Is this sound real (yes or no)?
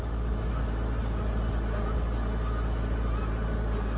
yes